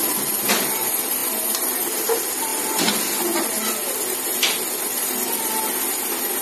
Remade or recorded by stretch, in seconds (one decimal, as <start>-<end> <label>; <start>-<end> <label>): 0.0-6.4 recorded